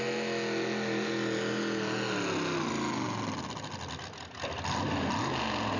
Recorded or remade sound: recorded